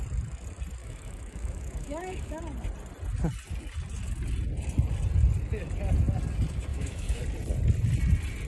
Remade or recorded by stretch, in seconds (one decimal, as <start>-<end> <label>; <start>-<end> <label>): 0.0-0.8 recorded; 0.8-2.4 remade; 2.4-6.7 recorded; 6.7-7.2 remade; 7.2-8.5 recorded